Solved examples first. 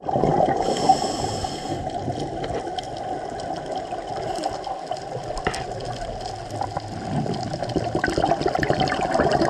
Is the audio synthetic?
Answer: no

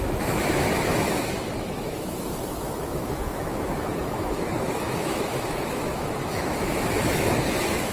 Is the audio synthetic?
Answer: yes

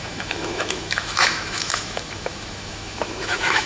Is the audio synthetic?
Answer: yes